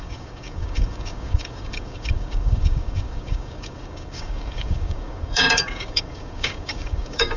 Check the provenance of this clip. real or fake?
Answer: fake